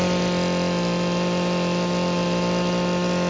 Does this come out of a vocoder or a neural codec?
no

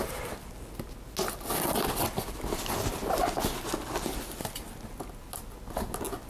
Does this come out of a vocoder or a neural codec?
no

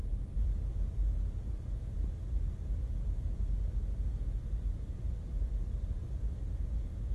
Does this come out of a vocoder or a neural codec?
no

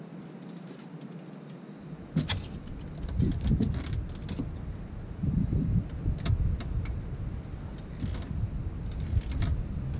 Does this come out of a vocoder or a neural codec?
no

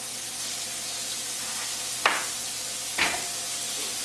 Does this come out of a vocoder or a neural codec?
no